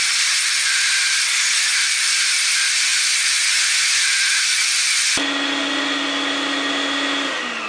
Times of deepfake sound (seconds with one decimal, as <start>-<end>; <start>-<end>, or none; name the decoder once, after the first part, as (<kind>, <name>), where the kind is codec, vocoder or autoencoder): none